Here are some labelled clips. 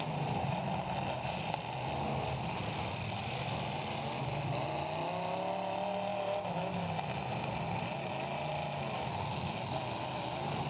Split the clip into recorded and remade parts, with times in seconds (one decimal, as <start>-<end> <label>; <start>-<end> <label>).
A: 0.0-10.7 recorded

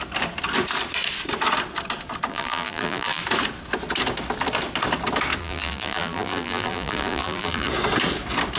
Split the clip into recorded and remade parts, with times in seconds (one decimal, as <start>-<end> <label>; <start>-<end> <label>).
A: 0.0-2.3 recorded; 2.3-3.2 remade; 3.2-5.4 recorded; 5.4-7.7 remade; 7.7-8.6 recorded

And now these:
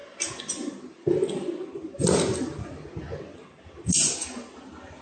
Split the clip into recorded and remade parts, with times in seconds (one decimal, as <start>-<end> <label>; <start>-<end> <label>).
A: 0.0-5.0 recorded

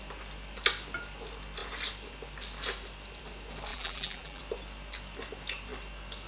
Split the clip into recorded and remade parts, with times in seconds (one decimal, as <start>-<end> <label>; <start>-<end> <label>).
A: 0.0-3.7 recorded; 3.7-4.4 remade; 4.4-6.3 recorded

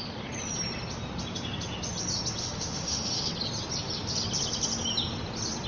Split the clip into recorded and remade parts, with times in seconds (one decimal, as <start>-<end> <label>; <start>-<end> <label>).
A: 0.0-2.4 recorded; 2.4-3.3 remade; 3.3-5.7 recorded

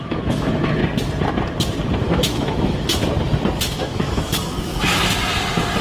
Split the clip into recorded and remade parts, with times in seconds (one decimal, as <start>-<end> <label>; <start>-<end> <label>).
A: 0.0-0.8 remade; 0.8-2.0 recorded; 2.0-3.0 remade; 3.0-3.6 recorded; 3.6-5.0 remade; 5.0-5.8 recorded

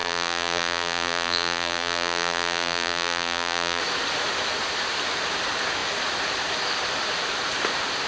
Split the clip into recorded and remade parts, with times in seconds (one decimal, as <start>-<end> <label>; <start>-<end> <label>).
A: 0.0-3.8 remade; 3.8-8.1 recorded

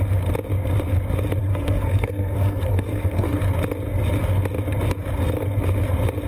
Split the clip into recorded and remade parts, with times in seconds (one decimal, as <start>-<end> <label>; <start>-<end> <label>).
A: 0.0-1.4 recorded; 1.4-3.4 remade; 3.4-6.3 recorded